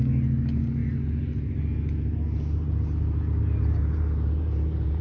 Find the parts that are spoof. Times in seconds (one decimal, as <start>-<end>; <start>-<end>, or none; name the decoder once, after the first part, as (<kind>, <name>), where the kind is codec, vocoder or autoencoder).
none